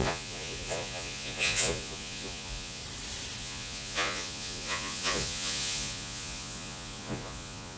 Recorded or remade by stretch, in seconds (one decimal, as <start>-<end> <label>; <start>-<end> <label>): 0.0-2.8 remade; 2.8-3.4 recorded; 3.4-7.8 remade